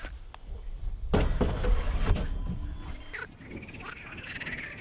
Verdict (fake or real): real